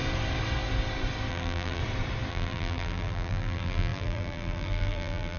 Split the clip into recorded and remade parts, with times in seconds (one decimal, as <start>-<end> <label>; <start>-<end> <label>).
0.0-1.3 recorded; 1.3-1.8 remade; 1.8-2.3 recorded; 2.3-5.4 remade